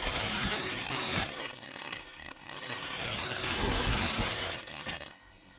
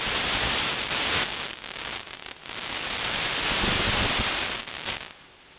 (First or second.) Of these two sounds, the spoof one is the first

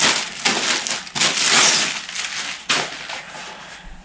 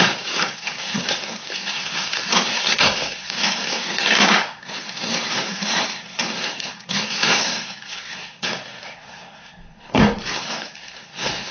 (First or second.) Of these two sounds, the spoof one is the second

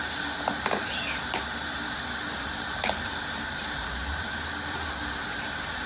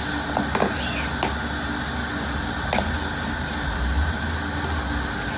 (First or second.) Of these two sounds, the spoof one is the first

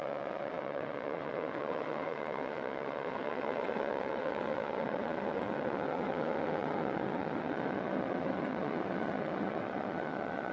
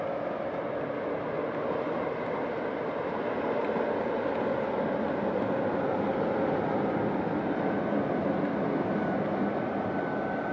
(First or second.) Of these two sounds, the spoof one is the first